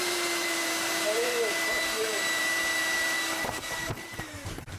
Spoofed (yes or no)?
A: yes